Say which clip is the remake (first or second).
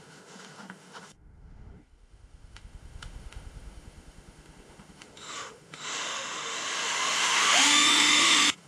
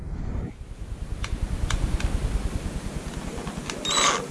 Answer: first